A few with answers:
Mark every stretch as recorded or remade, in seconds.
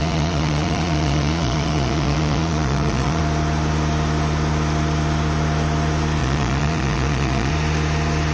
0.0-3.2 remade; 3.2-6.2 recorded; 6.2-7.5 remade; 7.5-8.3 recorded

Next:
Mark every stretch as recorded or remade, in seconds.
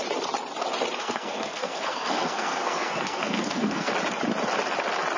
0.0-1.0 recorded; 1.0-3.9 remade; 3.9-5.2 recorded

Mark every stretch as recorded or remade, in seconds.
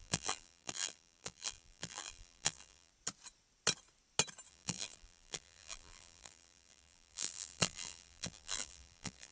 0.0-2.9 remade; 2.9-4.5 recorded; 4.5-9.3 remade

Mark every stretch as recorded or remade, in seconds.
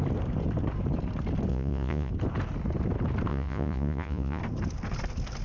0.0-1.5 recorded; 1.5-2.1 remade; 2.1-3.3 recorded; 3.3-4.4 remade; 4.4-5.4 recorded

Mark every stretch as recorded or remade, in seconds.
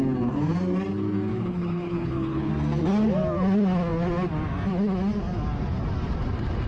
0.0-1.3 recorded; 1.3-2.5 remade; 2.5-6.7 recorded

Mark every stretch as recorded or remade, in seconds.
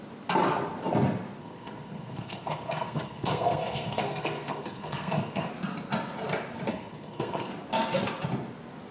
0.0-1.4 recorded; 1.4-5.5 remade; 5.5-6.7 recorded; 6.7-7.5 remade; 7.5-8.9 recorded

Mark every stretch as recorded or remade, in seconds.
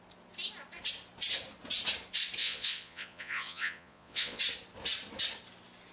0.0-2.4 recorded; 2.4-4.4 remade; 4.4-5.9 recorded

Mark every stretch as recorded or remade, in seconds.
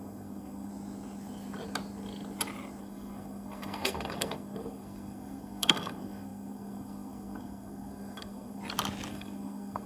0.0-0.7 remade; 0.7-2.8 recorded; 2.8-8.6 remade; 8.6-9.1 recorded; 9.1-9.9 remade